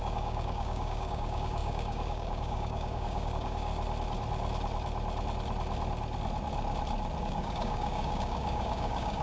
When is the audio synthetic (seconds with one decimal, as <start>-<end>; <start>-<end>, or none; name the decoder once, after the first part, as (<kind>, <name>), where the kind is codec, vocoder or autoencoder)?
0.0-3.7 (codec, DAC); 7.2-9.2